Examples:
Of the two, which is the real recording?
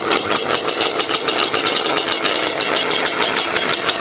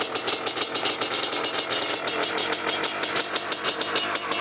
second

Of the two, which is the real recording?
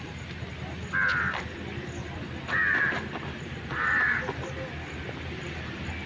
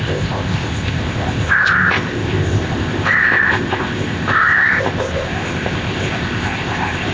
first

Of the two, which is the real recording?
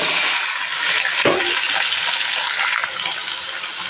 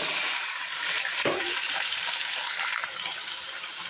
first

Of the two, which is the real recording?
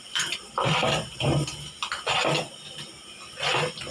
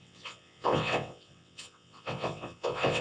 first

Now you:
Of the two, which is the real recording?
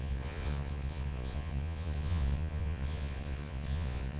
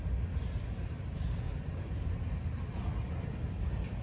second